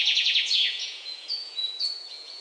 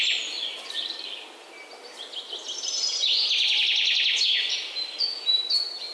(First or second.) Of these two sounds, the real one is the second